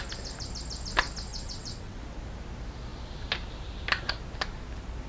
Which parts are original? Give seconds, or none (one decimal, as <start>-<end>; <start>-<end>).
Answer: 0.0-1.3; 2.0-5.1